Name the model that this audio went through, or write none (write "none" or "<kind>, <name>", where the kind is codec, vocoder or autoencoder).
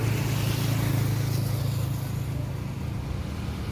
none